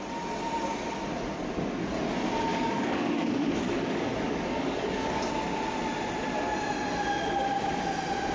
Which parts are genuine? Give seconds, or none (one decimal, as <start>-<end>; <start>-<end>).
0.0-2.5; 5.2-8.3